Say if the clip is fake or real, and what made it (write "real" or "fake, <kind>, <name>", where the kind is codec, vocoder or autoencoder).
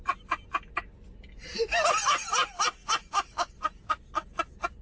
real